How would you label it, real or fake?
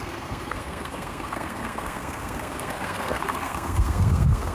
fake